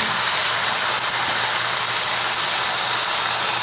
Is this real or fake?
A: real